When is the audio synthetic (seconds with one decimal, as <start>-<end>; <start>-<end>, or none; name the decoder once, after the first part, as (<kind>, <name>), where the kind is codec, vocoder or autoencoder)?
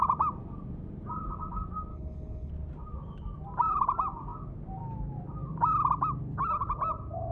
1.9-2.5 (codec, HILCodec)